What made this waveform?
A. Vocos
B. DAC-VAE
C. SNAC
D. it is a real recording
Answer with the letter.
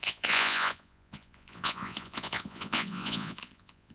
A